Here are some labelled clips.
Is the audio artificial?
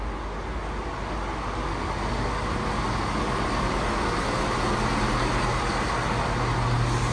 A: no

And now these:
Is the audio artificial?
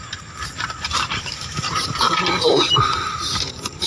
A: yes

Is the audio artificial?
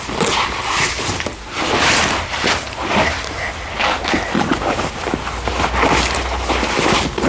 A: no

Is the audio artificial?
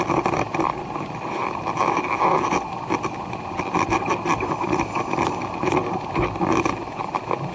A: no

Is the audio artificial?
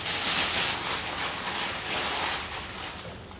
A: no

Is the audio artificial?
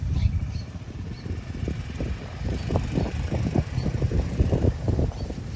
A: yes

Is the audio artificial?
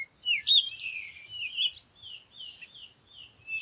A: no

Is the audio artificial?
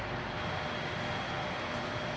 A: no